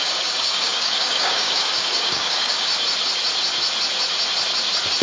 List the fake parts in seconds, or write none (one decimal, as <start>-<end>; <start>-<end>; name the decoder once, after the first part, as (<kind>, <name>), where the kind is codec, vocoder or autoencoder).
0.0-2.7 (codec, DAC)

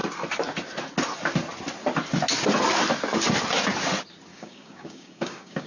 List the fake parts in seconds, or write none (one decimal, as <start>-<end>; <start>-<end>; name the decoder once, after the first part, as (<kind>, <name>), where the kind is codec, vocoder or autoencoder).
4.3-5.7 (codec, DAC)

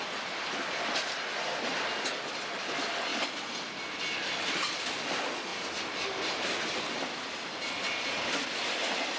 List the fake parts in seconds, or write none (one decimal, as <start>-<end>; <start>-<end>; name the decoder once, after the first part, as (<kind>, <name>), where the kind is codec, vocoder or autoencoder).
none

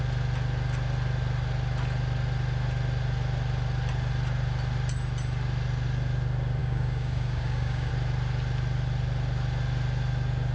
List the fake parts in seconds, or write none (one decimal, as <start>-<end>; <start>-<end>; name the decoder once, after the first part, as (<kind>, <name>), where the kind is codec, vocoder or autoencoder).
6.6-7.9 (codec, DAC)

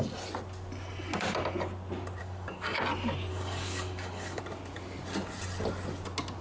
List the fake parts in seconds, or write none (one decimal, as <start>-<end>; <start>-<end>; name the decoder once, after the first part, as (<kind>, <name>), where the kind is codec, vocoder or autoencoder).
2.2-2.8 (codec, DAC); 3.3-4.4

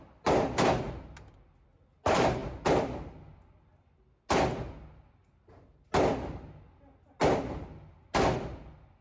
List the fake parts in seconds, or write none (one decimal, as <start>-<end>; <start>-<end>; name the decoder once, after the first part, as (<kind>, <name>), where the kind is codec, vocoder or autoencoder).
none

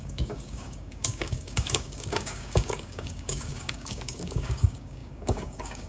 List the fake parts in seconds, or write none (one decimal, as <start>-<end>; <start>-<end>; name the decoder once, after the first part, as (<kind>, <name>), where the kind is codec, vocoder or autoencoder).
0.0-5.9 (codec, DAC)